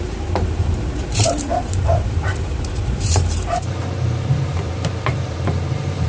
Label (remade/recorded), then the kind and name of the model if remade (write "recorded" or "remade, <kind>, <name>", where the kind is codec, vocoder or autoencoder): remade, vocoder, BigVGAN v2